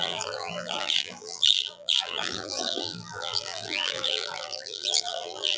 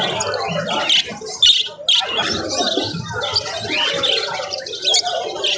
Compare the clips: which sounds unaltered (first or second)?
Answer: second